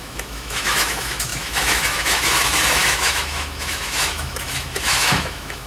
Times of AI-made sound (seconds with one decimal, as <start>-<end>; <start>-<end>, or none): 0.0-5.7